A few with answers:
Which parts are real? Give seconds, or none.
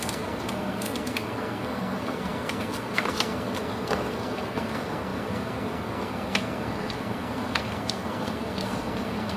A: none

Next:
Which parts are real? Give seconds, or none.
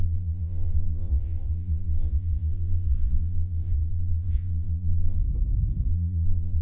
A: 5.2-5.9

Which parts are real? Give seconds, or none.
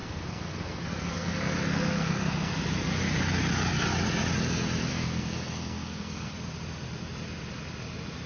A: 2.6-4.9; 6.3-8.3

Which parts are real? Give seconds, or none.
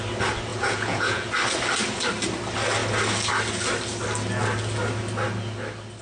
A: 0.0-0.5; 1.3-6.0